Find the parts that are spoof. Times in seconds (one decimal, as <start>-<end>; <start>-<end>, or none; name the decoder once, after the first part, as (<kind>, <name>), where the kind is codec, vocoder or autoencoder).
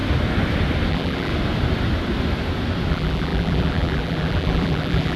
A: 0.9-1.3 (vocoder, BigVGAN v2); 2.9-5.2